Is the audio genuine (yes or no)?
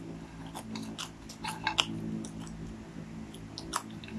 yes